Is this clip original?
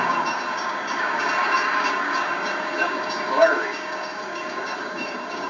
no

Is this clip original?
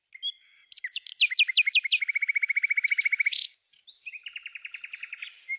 yes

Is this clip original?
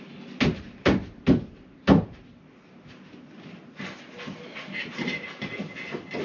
yes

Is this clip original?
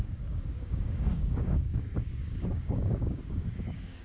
no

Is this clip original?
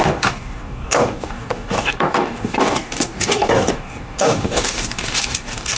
no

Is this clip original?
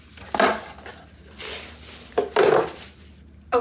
yes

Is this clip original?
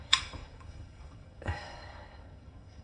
no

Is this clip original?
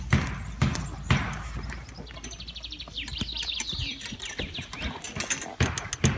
yes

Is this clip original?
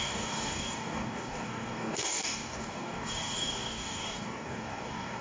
no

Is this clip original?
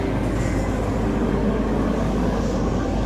no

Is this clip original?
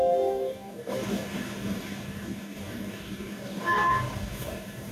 no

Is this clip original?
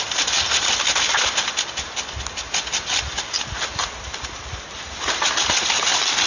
yes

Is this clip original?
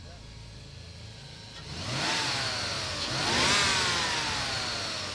yes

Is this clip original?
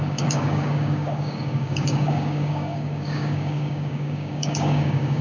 no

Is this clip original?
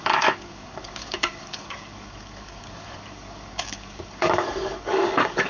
no